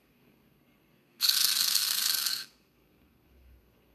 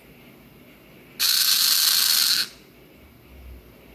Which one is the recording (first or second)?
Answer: second